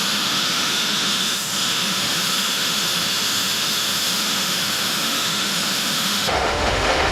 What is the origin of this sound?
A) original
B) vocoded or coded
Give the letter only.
B